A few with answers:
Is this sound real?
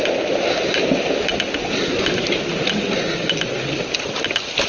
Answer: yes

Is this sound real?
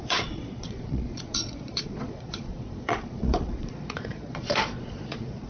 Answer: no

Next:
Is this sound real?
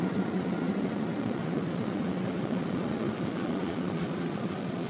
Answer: no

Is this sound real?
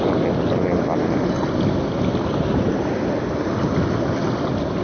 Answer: yes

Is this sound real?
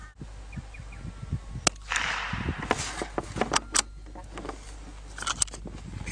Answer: yes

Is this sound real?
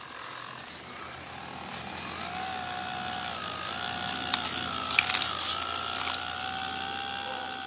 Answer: yes